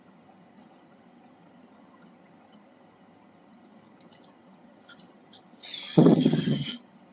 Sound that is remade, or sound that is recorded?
remade